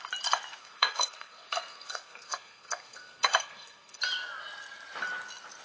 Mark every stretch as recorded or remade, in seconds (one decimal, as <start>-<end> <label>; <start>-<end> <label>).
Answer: 0.0-0.6 recorded; 0.6-4.0 remade; 4.0-5.6 recorded